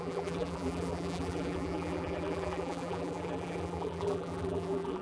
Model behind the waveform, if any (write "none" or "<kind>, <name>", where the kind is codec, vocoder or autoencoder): vocoder, BigVGAN v2